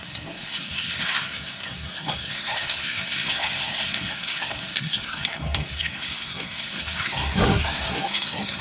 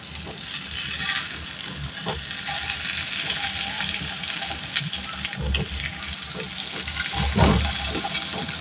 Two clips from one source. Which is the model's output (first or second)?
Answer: first